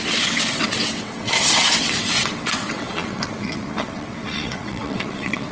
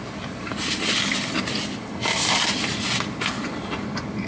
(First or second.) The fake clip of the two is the first